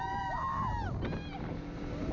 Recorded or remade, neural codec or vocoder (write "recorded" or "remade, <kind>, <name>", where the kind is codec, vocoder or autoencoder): recorded